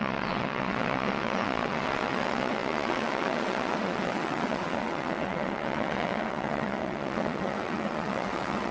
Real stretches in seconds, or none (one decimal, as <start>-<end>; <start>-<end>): none